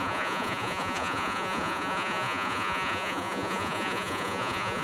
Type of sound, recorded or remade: remade